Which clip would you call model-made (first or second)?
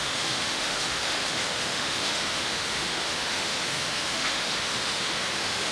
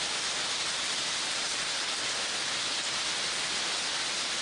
first